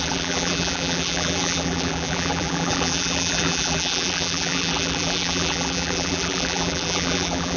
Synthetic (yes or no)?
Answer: yes